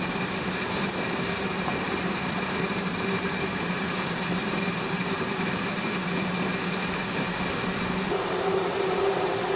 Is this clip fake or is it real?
fake